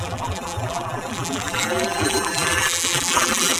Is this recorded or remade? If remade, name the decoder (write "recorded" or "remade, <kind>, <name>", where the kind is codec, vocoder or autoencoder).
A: remade, vocoder, BigVGAN v2